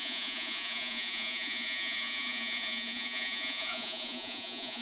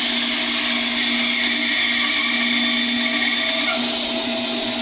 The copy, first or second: first